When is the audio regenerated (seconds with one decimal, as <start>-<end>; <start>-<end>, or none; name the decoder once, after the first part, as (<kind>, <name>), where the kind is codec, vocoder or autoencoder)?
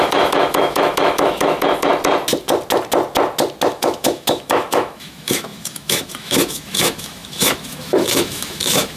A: 0.0-1.9 (autoencoder, DAC-VAE); 3.7-9.0